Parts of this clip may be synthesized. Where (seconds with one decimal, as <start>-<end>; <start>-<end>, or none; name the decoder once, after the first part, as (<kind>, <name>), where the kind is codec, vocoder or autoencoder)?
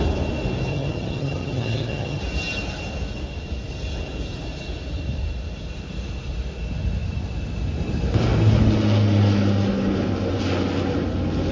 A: 0.7-2.2 (vocoder, HiFi-GAN)